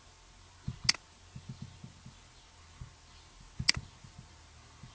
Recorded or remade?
recorded